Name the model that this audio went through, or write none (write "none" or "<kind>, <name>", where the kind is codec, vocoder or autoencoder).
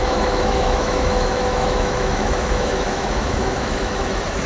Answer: autoencoder, DAC-VAE